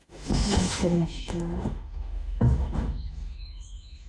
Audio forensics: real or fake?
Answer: fake